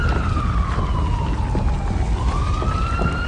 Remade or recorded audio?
recorded